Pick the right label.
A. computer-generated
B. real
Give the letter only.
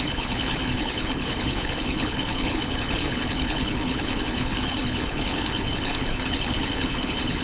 A